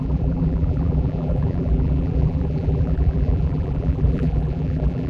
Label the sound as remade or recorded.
remade